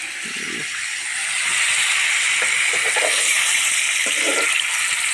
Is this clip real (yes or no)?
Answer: yes